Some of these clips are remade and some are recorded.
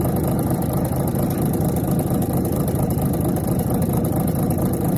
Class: remade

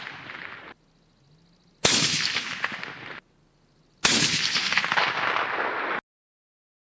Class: recorded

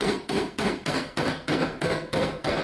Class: remade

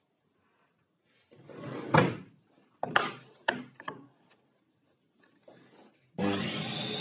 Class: recorded